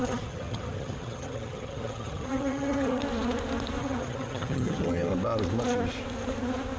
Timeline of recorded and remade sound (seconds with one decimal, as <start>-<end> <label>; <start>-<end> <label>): 0.0-3.0 remade; 3.0-3.8 recorded; 3.8-5.1 remade; 5.1-6.8 recorded